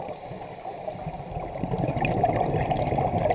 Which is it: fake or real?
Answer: real